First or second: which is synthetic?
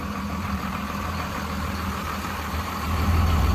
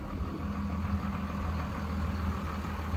first